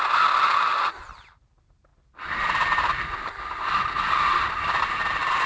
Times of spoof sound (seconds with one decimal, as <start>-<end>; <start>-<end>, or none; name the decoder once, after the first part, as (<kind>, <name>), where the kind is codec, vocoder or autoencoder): none